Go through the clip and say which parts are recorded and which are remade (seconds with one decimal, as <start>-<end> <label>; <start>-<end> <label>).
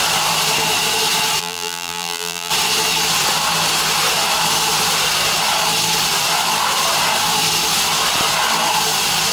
0.0-1.4 recorded; 1.4-2.5 remade; 2.5-9.3 recorded